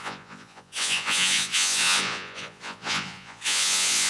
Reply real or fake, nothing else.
fake